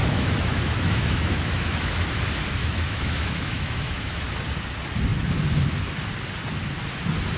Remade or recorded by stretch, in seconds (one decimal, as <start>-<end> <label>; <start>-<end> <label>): 0.0-2.2 remade; 2.2-2.6 recorded; 2.6-4.2 remade; 4.2-7.4 recorded